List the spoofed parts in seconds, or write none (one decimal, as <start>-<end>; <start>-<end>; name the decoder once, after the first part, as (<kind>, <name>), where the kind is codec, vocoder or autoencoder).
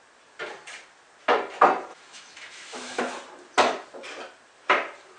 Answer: 1.9-3.0 (autoencoder, DAC-VAE)